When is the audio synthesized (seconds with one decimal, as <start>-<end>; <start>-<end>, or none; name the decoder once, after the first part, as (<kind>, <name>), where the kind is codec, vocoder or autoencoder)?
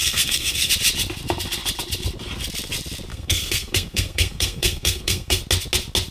0.0-0.7 (codec, SNAC); 3.1-5.4